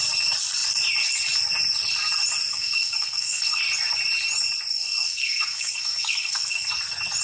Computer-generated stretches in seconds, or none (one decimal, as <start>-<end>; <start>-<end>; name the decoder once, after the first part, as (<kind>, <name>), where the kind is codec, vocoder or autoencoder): 2.5-3.6 (codec, SNAC); 4.7-6.7